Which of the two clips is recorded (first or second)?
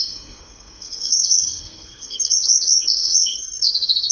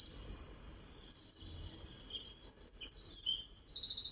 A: second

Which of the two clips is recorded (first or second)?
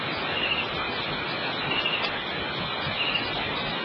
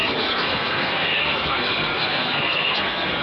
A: first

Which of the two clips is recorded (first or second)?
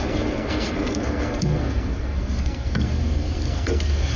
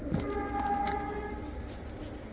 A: second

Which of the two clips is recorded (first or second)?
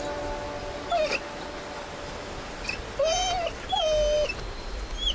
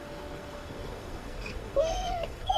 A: first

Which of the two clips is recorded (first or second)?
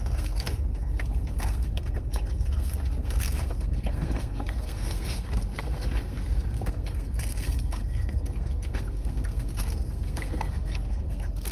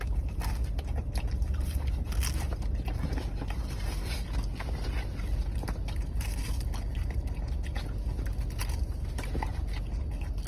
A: second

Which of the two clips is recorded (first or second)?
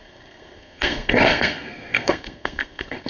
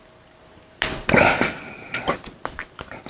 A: second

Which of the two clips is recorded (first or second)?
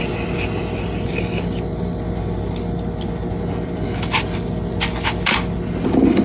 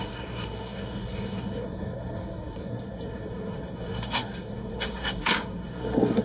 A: first